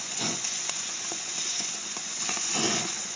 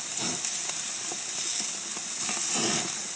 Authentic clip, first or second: second